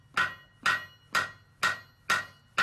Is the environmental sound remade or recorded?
recorded